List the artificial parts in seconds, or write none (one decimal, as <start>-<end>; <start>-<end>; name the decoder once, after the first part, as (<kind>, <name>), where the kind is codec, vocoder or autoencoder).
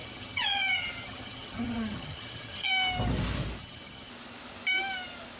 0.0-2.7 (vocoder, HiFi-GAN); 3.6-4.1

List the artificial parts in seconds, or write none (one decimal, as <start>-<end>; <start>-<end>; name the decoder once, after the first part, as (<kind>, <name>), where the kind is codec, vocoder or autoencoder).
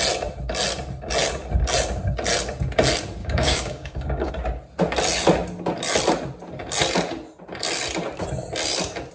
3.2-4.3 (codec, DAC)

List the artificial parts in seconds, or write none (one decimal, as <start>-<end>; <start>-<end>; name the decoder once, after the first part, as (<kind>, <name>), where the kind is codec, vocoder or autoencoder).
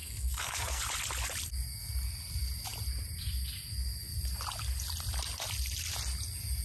0.0-0.8 (codec, SNAC)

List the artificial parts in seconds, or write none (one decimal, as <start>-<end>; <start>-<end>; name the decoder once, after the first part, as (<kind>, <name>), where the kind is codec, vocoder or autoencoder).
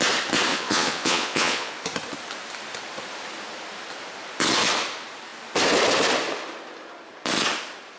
0.5-1.7 (vocoder, Vocos)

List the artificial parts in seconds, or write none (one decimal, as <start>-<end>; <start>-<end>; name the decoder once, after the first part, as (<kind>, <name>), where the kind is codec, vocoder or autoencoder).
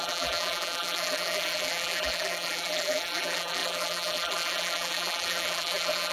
0.0-6.1 (vocoder, BigVGAN v2)